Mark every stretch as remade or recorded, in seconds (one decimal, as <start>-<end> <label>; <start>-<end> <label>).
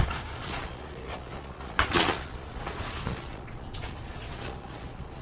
0.0-5.2 remade